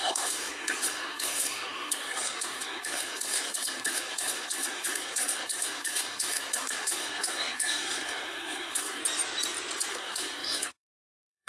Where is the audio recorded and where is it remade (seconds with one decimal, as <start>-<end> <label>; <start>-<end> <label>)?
0.0-9.0 remade; 9.0-9.9 recorded; 9.9-11.5 remade